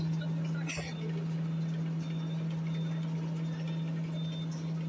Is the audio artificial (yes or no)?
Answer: no